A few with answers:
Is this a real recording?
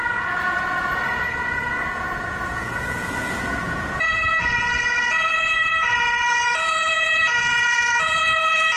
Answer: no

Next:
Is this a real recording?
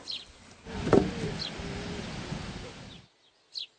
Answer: yes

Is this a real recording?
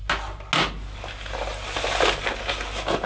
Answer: yes